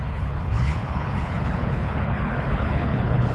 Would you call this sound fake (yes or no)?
yes